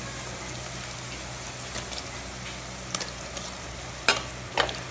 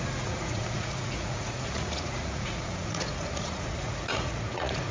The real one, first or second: first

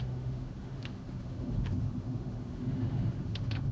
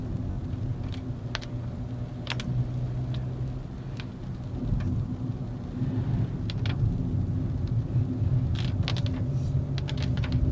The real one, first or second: second